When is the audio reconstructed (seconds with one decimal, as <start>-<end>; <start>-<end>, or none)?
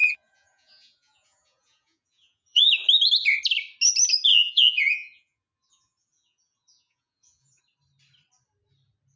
0.0-2.7; 4.3-7.6